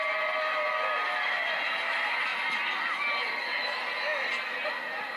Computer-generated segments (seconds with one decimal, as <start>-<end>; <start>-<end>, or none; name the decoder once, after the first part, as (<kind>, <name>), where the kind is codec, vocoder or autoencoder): none